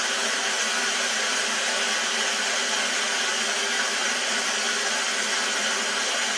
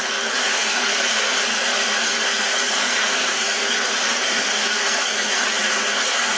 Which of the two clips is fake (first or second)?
second